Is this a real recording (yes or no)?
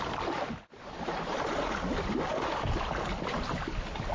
yes